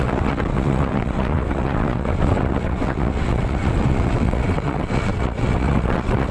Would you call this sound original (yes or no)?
no